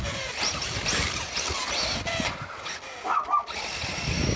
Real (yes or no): yes